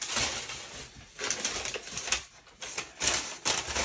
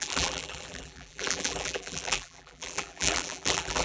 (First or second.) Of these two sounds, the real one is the first